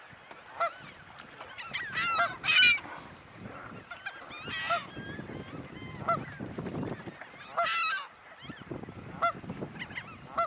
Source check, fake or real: real